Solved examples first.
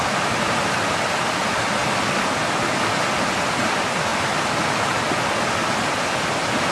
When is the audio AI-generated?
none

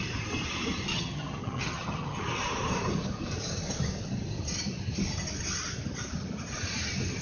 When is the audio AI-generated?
0.9-2.2 (vocoder, HiFi-GAN)

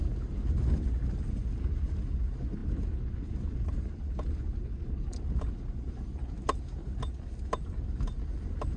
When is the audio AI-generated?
none

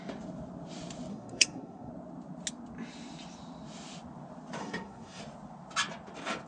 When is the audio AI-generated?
1.1-1.9 (codec, SNAC); 4.6-5.2

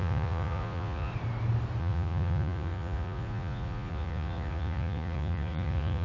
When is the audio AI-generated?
0.0-1.1 (vocoder, Vocos); 1.8-6.0